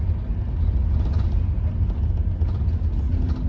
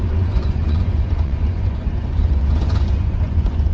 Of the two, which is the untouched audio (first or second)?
first